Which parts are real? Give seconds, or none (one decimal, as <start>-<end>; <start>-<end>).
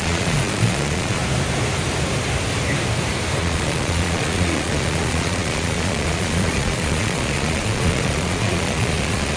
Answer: 1.2-3.4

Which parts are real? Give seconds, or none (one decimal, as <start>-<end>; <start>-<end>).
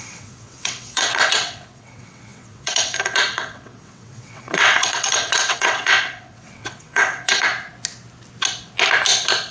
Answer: 7.5-9.5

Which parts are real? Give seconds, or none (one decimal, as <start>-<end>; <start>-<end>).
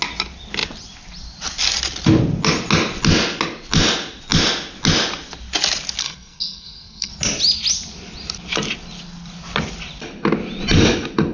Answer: 0.0-6.0; 7.1-11.3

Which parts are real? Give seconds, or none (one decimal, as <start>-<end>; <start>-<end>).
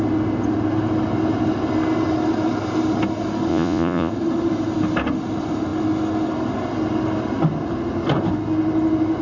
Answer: 0.0-3.5; 4.1-9.2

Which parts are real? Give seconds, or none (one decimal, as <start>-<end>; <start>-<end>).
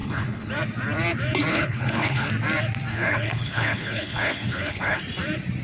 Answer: 0.5-1.5; 2.3-2.9; 5.0-5.6